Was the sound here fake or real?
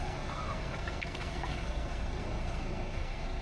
fake